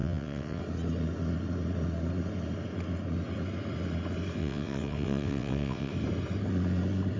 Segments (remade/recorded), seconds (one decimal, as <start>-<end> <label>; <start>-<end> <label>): 0.0-0.6 remade; 0.6-4.4 recorded; 4.4-5.9 remade; 5.9-7.2 recorded